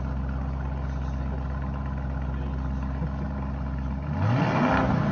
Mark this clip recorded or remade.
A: recorded